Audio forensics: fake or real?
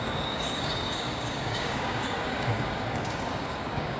fake